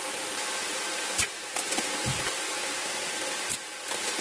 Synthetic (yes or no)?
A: no